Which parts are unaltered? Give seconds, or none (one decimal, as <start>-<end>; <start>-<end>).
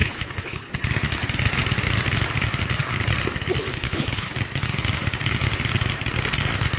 0.7-3.7; 4.3-6.8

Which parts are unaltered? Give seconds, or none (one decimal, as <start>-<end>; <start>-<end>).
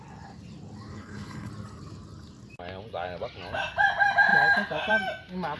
0.0-0.9; 1.5-5.6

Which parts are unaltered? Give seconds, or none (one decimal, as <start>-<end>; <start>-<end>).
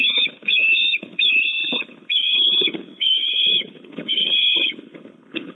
none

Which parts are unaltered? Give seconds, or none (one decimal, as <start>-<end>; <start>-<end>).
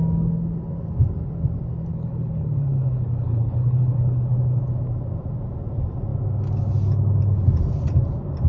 0.0-1.9; 4.6-8.5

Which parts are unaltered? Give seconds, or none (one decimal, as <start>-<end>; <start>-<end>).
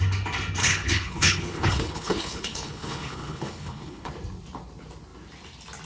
0.0-0.6; 4.1-5.8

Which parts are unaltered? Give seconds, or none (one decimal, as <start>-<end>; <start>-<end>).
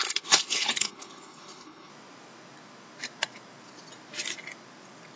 1.9-5.2